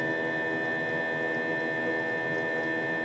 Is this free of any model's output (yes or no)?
yes